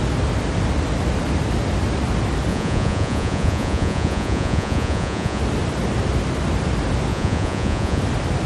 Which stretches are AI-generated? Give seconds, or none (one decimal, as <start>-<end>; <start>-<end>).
2.5-5.4; 7.1-8.0